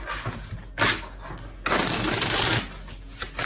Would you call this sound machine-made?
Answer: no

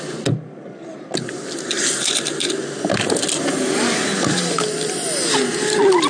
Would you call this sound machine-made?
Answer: no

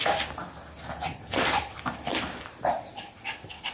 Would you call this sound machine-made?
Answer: no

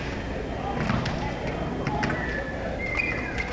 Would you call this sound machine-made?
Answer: no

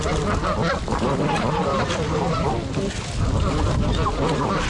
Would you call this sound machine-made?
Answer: no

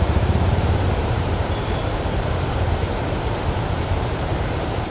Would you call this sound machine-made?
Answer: yes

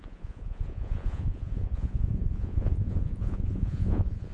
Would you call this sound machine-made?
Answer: yes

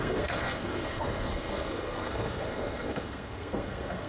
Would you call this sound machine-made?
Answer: yes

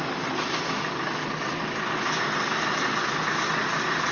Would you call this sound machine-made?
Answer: no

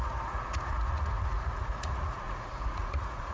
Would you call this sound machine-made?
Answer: yes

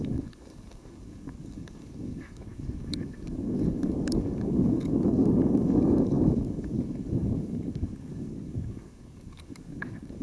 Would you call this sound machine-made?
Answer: yes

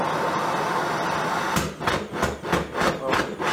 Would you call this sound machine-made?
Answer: no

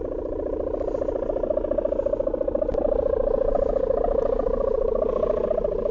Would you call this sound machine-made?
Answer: no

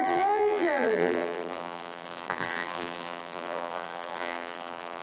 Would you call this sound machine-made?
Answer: yes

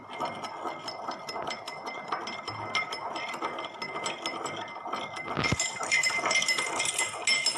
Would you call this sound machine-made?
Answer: no